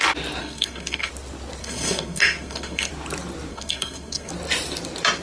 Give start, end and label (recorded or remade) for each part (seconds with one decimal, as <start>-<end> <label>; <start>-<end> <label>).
0.0-0.4 recorded; 0.4-1.1 remade; 1.1-1.6 recorded; 1.6-2.9 remade; 2.9-3.5 recorded; 3.5-4.3 remade; 4.3-5.2 recorded